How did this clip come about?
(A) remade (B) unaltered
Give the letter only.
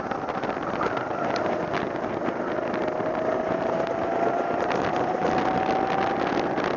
B